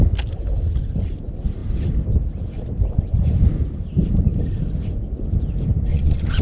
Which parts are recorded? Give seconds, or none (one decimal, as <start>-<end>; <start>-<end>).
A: 0.0-5.9